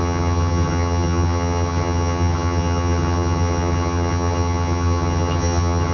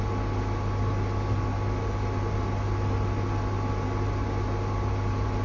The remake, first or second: first